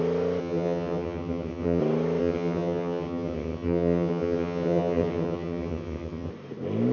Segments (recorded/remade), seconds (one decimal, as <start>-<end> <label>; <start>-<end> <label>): 0.0-0.4 recorded; 0.4-1.8 remade; 1.8-2.2 recorded; 2.2-6.3 remade; 6.3-6.9 recorded